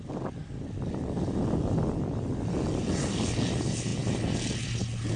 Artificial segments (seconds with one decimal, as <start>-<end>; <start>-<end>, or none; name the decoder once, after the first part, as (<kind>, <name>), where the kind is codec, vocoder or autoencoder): none